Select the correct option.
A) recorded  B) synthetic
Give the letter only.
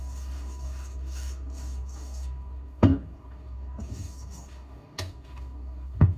B